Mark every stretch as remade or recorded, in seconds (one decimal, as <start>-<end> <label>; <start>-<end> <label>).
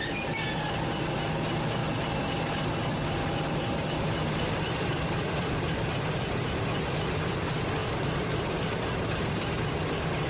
0.0-7.8 recorded; 7.8-9.7 remade; 9.7-10.3 recorded